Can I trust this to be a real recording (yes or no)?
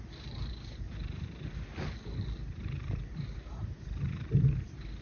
no